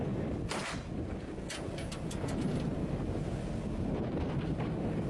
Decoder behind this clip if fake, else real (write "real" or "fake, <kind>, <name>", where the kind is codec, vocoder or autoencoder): real